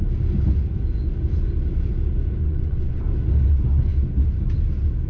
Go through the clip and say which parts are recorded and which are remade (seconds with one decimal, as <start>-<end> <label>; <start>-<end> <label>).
0.0-2.4 recorded; 2.4-3.0 remade; 3.0-5.1 recorded